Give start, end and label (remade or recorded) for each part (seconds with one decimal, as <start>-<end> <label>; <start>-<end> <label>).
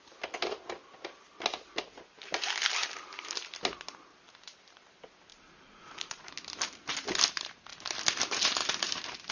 0.0-5.3 recorded; 5.3-6.3 remade; 6.3-9.3 recorded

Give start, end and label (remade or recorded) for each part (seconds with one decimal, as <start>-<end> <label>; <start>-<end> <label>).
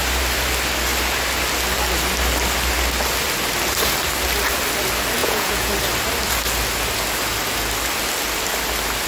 0.0-5.2 recorded; 5.2-5.7 remade; 5.7-9.1 recorded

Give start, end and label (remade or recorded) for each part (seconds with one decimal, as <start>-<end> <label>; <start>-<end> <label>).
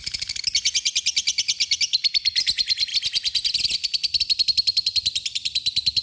0.0-6.0 recorded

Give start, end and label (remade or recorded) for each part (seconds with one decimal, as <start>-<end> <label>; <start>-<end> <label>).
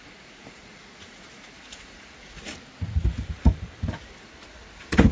0.0-2.5 remade; 2.5-4.1 recorded; 4.1-5.1 remade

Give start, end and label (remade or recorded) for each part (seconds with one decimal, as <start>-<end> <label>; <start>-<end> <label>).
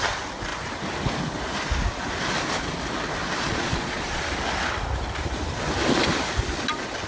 0.0-3.2 recorded; 3.2-4.2 remade; 4.2-7.1 recorded